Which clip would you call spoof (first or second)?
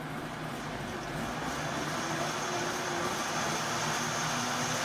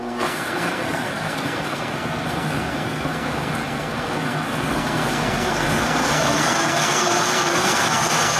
second